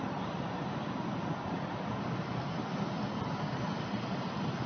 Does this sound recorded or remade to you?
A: recorded